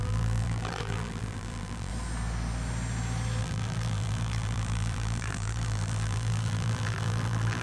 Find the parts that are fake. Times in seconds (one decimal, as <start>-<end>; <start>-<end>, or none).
0.0-1.9; 3.4-7.6